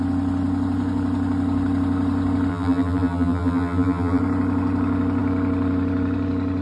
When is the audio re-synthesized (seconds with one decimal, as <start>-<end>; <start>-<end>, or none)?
2.5-4.2